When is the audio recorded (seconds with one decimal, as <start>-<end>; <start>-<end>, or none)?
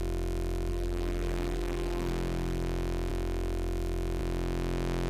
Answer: 0.0-0.7; 2.1-5.1